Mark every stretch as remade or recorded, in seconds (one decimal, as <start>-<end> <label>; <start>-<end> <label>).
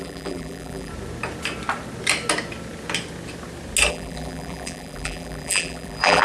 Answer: 0.0-0.9 remade; 0.9-3.9 recorded; 3.9-6.2 remade